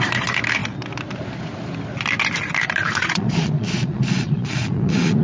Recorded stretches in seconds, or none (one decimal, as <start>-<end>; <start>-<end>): 0.0-3.0